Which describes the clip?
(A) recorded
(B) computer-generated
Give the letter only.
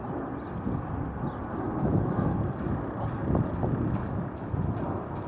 A